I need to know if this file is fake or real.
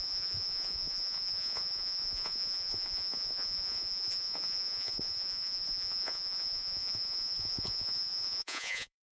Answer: fake